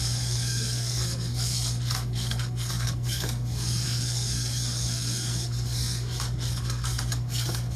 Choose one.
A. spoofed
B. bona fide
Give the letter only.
A